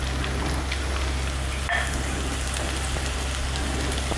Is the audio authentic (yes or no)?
yes